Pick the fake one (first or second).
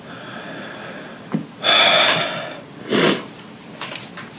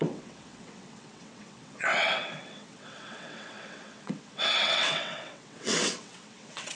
second